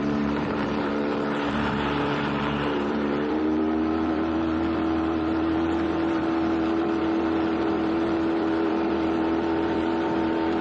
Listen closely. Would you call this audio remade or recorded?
remade